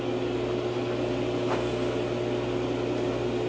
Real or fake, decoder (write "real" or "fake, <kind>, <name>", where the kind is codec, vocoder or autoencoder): real